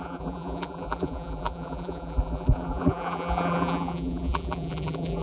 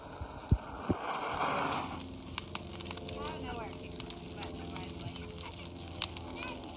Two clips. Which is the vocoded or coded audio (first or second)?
first